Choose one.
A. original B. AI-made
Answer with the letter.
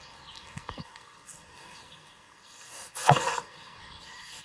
B